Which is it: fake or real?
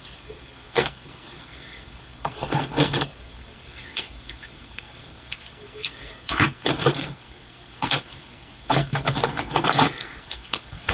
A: fake